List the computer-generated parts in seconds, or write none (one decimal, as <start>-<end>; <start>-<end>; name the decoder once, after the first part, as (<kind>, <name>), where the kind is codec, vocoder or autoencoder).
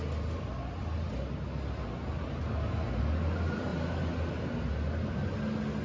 none